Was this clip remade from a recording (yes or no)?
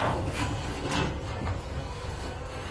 yes